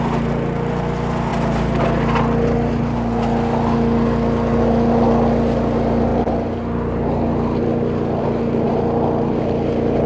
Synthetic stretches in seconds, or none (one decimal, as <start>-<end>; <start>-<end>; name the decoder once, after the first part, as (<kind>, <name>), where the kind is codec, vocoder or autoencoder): none